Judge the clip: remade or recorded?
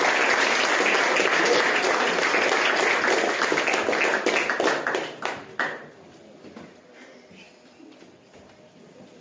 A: recorded